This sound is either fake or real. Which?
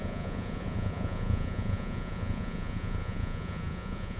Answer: fake